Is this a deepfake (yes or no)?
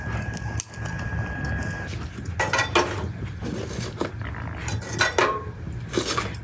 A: no